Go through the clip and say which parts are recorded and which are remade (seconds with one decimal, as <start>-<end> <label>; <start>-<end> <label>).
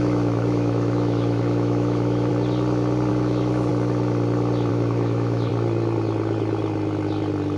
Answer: 0.0-2.3 remade; 2.3-3.1 recorded; 3.1-3.7 remade; 3.7-4.7 recorded; 4.7-5.5 remade; 5.5-7.6 recorded